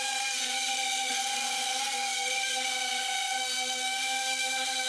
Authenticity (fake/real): fake